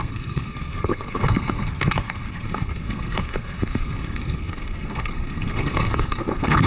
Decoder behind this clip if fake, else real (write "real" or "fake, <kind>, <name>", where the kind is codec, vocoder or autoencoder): fake, codec, SNAC